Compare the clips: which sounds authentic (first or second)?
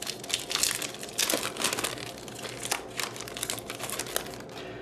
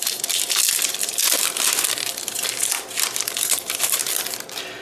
first